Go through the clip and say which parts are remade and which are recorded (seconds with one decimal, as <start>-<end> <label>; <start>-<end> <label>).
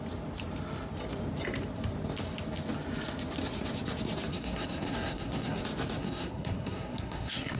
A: 0.0-4.3 recorded; 4.3-5.6 remade; 5.6-6.0 recorded; 6.0-7.6 remade